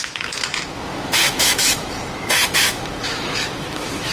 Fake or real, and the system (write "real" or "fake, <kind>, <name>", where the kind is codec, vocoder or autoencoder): fake, autoencoder, DAC-VAE